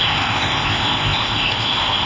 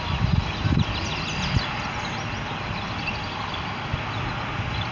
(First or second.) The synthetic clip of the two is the first